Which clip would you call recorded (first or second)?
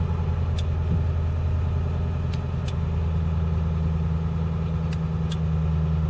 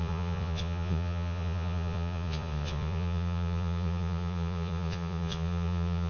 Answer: first